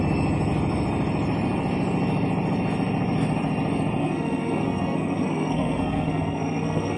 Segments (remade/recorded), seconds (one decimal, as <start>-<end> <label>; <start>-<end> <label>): 0.0-4.0 recorded; 4.0-7.0 remade